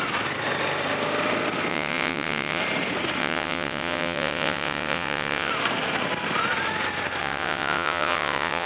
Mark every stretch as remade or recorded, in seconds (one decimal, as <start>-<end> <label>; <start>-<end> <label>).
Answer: 0.0-1.7 recorded; 1.7-2.6 remade; 2.6-3.2 recorded; 3.2-5.5 remade; 5.5-7.2 recorded; 7.2-8.7 remade